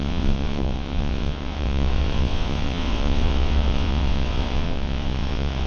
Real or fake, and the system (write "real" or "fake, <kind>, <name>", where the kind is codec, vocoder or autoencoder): fake, vocoder, WaveNeXt